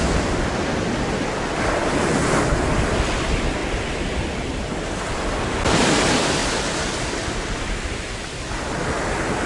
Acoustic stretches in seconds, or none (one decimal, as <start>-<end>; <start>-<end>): 0.0-3.6; 4.7-6.4; 7.7-9.5